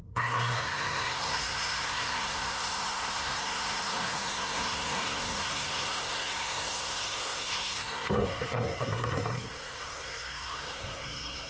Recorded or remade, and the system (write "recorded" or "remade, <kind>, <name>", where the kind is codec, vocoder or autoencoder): remade, codec, SNAC